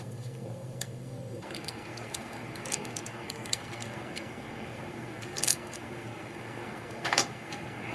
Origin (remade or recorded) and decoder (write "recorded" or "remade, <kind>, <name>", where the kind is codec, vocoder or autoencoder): remade, codec, SNAC